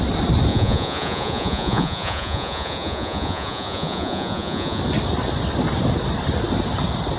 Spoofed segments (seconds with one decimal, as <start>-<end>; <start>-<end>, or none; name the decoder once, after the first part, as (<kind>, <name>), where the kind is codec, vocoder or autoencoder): 0.5-4.8 (vocoder, Vocos)

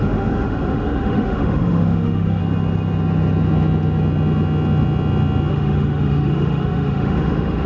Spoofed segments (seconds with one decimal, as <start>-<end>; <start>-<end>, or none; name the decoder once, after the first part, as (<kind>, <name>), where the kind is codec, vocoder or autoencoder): 0.0-2.4 (autoencoder, DAC-VAE); 5.5-7.7